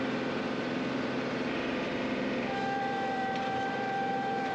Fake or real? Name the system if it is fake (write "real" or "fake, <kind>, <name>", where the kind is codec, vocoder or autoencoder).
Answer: fake, vocoder, BigVGAN v2